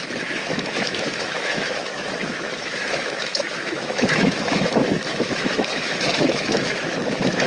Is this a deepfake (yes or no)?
yes